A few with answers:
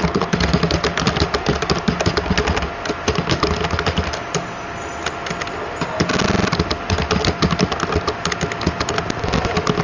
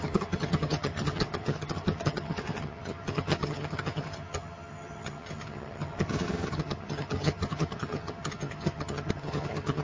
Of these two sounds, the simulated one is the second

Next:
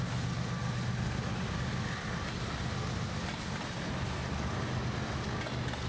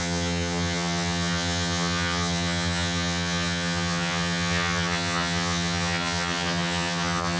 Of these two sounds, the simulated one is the second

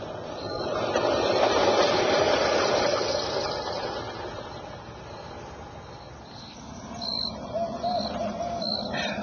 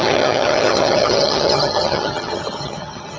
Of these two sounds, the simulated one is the second